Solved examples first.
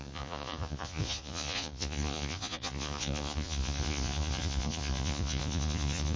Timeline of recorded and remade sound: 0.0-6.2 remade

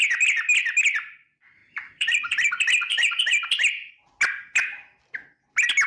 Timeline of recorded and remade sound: 0.0-1.6 recorded; 1.6-2.5 remade; 2.5-2.9 recorded; 2.9-4.1 remade; 4.1-5.9 recorded

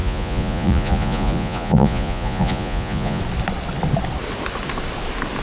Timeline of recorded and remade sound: 0.0-3.2 remade; 3.2-5.4 recorded

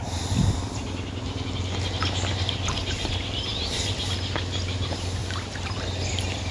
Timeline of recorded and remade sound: 0.0-3.5 recorded; 3.5-4.1 remade; 4.1-5.2 recorded; 5.2-6.1 remade; 6.1-6.5 recorded

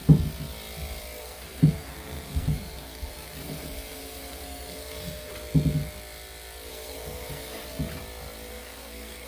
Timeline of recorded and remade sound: 0.0-1.2 recorded; 1.2-5.3 remade; 5.3-6.7 recorded; 6.7-7.6 remade; 7.6-8.5 recorded; 8.5-9.3 remade

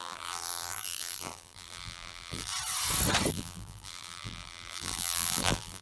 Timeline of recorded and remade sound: 0.0-2.5 remade; 2.5-3.3 recorded; 3.3-5.8 remade

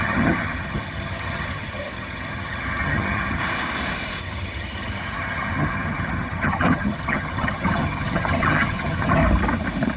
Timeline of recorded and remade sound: 0.0-3.4 remade; 3.4-4.2 recorded; 4.2-9.2 remade; 9.2-10.0 recorded

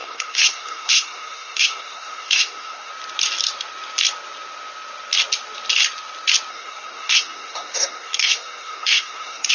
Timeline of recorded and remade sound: 0.0-2.9 remade; 2.9-6.5 recorded; 6.5-9.5 remade